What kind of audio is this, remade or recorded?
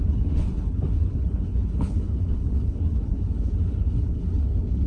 remade